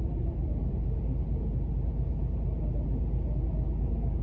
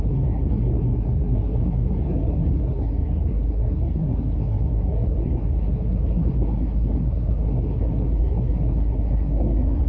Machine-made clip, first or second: second